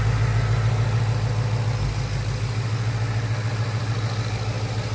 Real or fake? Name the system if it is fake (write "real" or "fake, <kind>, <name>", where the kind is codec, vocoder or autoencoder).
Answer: real